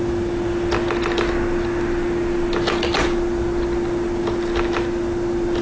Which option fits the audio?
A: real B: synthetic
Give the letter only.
A